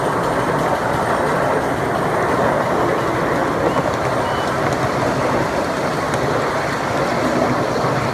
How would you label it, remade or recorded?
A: recorded